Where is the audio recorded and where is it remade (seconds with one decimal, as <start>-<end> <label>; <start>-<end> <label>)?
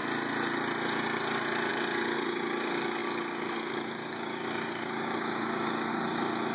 0.0-1.7 recorded; 1.7-6.5 remade